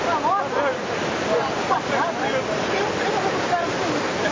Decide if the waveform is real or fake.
real